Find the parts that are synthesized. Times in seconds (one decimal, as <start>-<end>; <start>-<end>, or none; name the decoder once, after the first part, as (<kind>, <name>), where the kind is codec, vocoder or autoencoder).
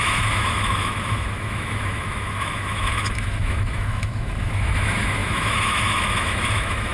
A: 0.0-6.9 (autoencoder, DAC-VAE)